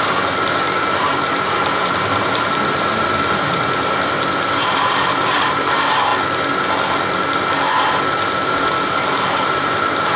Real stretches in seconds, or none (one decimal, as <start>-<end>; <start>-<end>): 6.1-8.5